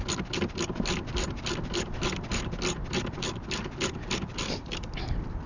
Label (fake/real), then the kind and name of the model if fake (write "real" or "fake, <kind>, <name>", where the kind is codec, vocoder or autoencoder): real